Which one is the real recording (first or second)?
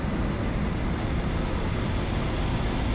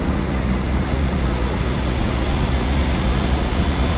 first